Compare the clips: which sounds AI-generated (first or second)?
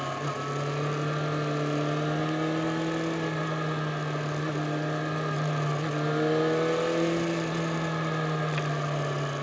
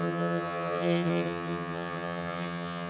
second